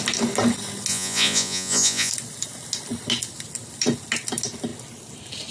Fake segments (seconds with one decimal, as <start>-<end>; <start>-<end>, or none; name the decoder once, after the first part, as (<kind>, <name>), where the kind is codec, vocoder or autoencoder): 0.9-2.1 (vocoder, Vocos)